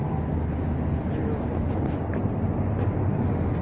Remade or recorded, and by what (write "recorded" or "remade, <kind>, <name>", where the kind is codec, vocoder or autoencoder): recorded